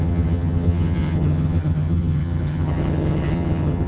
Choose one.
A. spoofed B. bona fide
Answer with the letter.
A